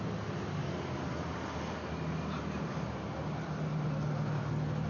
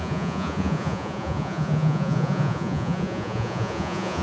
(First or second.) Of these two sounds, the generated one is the second